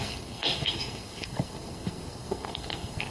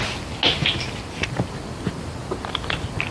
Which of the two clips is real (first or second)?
second